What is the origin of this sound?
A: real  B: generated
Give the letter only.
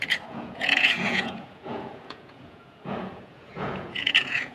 B